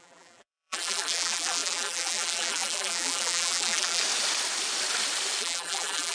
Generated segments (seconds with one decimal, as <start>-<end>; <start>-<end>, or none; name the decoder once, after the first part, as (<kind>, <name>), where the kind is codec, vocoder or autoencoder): 0.0-4.0 (vocoder, BigVGAN v2); 5.4-6.1